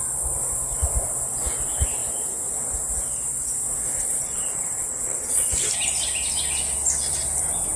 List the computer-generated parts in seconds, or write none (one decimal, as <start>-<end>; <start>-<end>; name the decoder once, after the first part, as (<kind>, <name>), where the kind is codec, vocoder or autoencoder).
3.9-5.5 (vocoder, Vocos)